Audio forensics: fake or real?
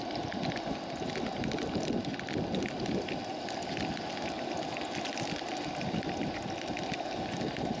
real